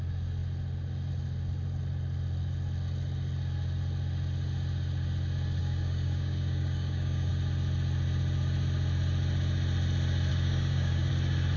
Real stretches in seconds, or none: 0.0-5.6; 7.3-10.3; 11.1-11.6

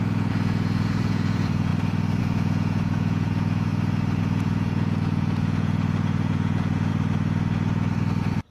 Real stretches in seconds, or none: 1.7-2.2; 3.7-4.2; 6.9-8.5